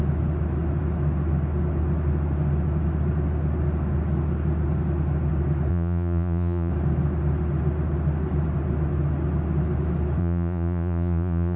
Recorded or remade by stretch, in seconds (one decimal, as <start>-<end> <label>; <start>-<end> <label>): 0.0-5.7 recorded; 5.7-6.7 remade; 6.7-10.2 recorded; 10.2-11.6 remade